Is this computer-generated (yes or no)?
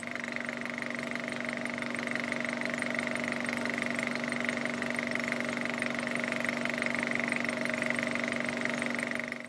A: no